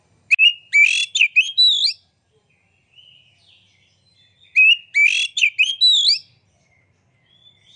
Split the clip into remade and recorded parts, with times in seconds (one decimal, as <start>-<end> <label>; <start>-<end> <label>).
0.0-7.8 recorded

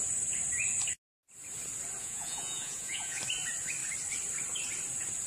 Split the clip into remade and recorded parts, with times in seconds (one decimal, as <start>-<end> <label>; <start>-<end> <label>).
0.0-2.0 recorded; 2.0-3.2 remade; 3.2-5.3 recorded

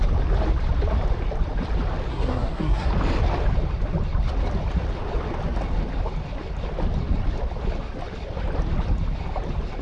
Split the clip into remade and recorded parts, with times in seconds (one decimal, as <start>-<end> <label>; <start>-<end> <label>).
0.0-2.1 recorded; 2.1-2.9 remade; 2.9-9.8 recorded

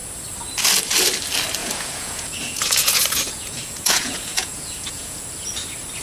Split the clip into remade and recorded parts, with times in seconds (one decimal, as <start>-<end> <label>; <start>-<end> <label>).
0.0-1.6 recorded; 1.6-5.2 remade; 5.2-6.0 recorded

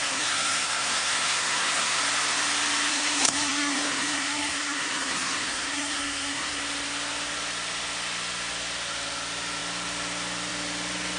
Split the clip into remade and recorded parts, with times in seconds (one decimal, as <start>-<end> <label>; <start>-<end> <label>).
0.0-2.0 remade; 2.0-2.9 recorded; 2.9-6.6 remade; 6.6-11.2 recorded

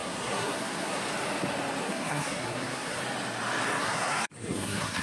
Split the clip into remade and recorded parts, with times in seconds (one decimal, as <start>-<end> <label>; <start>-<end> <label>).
0.0-1.0 remade; 1.0-1.8 recorded; 1.8-3.0 remade; 3.0-3.8 recorded; 3.8-5.0 remade

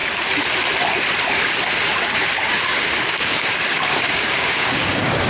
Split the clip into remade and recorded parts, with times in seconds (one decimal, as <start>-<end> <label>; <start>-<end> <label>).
0.0-2.0 recorded; 2.0-5.3 remade

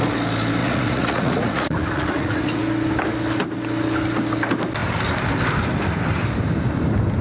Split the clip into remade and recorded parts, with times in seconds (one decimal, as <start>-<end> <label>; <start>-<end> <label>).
0.0-0.6 recorded; 0.6-2.6 remade; 2.6-7.2 recorded